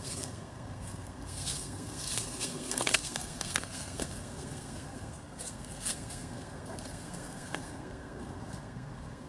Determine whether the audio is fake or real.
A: fake